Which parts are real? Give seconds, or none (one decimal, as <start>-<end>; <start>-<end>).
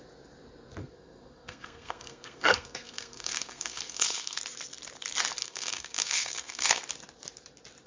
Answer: 0.0-0.8; 4.4-5.4; 6.8-7.9